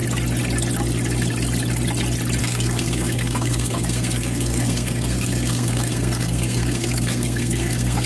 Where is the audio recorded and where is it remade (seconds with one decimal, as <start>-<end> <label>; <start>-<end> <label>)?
0.0-2.4 recorded; 2.4-8.1 remade